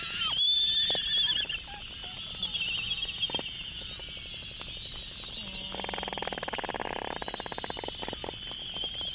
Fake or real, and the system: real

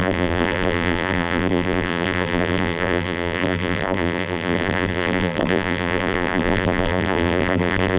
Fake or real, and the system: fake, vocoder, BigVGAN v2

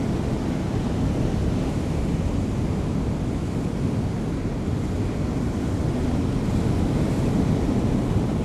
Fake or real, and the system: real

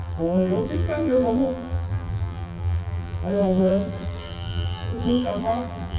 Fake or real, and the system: fake, vocoder, BigVGAN v2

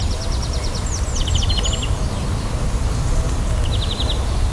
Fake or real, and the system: real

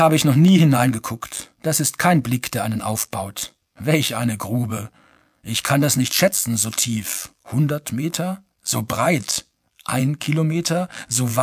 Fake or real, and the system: fake, vocoder, BigVGAN v2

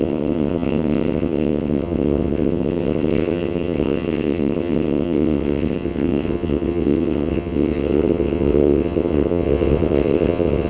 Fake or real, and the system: fake, vocoder, WaveNeXt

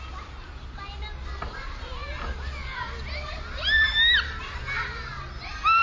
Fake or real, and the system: real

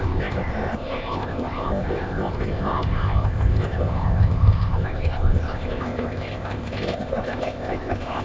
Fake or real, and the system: fake, codec, ZipCodec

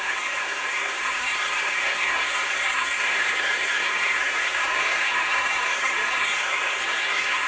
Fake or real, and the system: fake, codec, SNAC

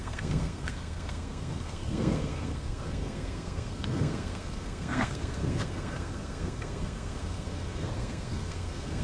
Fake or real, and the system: fake, codec, SNAC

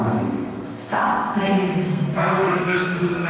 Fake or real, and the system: fake, codec, SNAC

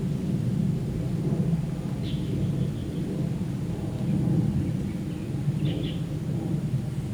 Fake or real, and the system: real